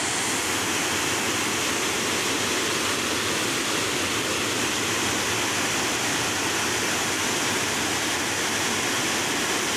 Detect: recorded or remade recorded